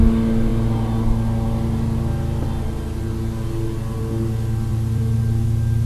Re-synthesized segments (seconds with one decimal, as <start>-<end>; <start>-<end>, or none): 4.7-5.2